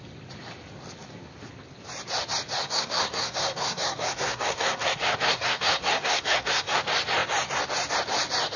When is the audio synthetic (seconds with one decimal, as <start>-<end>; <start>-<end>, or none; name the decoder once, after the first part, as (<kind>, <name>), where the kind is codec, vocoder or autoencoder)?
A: 2.6-6.8 (codec, SNAC)